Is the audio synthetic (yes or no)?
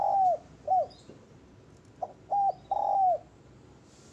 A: no